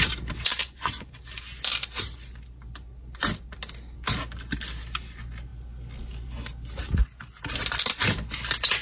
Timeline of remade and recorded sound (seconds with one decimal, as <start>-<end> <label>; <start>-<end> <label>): 0.0-0.6 recorded; 0.6-1.1 remade; 1.1-8.8 recorded